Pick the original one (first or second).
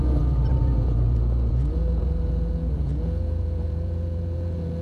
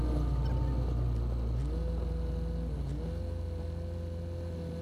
second